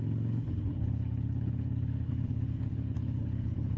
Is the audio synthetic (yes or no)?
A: yes